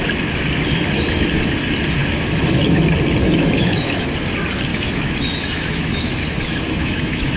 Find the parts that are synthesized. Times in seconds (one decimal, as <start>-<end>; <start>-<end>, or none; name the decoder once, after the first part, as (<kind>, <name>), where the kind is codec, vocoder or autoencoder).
3.2-4.1 (autoencoder, DAC-VAE); 4.7-7.4